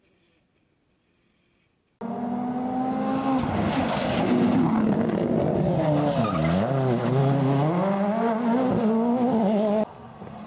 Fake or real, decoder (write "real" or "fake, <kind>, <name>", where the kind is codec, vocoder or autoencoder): real